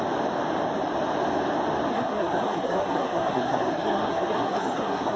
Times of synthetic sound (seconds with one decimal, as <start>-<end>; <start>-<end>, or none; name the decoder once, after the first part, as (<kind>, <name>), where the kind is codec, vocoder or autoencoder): 1.9-5.2 (codec, SNAC)